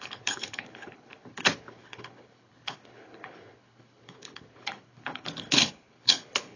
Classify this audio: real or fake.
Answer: fake